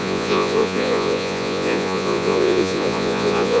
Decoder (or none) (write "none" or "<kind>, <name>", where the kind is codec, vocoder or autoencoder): vocoder, Vocos